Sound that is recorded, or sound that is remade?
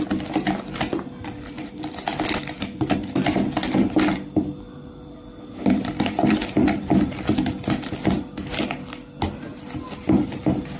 recorded